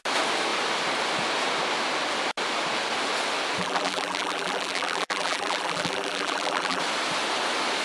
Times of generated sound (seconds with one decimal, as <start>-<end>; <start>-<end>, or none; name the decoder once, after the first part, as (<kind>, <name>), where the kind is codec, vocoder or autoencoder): 3.6-6.8 (vocoder, BigVGAN v2)